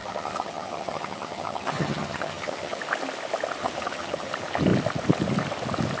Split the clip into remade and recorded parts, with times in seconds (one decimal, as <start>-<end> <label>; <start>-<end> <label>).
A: 0.0-2.8 remade; 2.8-3.6 recorded; 3.6-4.3 remade; 4.3-6.0 recorded